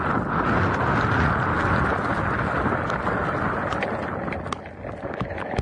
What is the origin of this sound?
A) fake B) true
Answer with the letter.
B